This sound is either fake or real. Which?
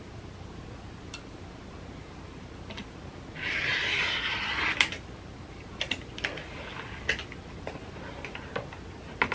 real